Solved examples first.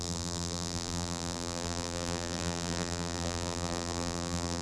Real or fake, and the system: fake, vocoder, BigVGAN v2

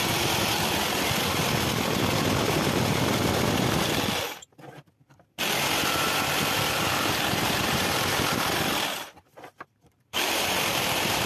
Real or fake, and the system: fake, vocoder, BigVGAN v2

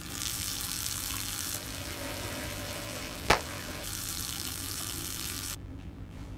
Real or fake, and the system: fake, vocoder, BigVGAN v2